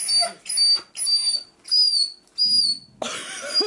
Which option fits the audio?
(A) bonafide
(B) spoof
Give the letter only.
A